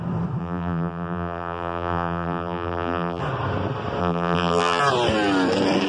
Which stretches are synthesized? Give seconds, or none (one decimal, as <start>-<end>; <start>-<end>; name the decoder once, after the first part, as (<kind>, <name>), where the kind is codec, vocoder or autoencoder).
0.4-3.2 (vocoder, BigVGAN v2); 4.0-4.8